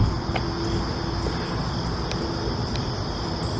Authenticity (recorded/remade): recorded